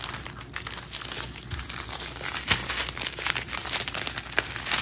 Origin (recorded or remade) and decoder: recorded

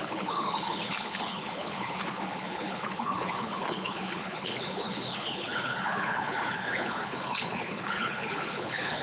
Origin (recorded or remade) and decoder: remade, codec, HILCodec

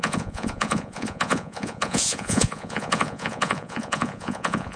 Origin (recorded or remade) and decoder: remade, vocoder, Vocos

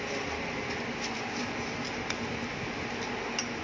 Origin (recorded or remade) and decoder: recorded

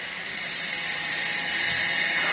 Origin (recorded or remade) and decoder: recorded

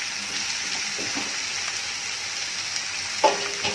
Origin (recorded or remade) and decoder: recorded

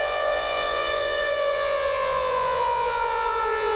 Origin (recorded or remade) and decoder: remade, vocoder, Vocos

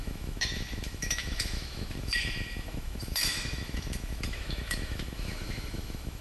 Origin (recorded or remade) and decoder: remade, autoencoder, DAC-VAE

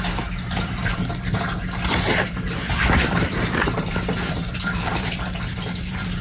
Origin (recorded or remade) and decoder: remade, vocoder, BigVGAN v2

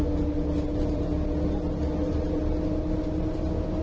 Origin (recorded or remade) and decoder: recorded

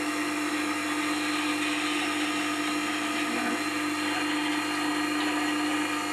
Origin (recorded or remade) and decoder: recorded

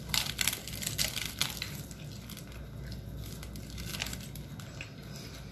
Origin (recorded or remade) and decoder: recorded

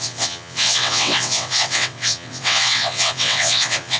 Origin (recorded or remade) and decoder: remade, vocoder, WaveNeXt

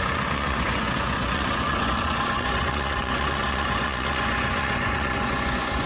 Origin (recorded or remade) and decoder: remade, vocoder, Vocos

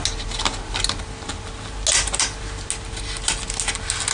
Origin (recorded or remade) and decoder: recorded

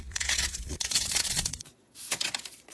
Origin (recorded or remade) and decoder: remade, vocoder, Vocos